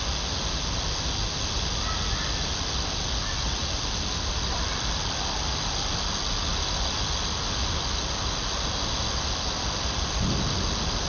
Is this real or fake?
real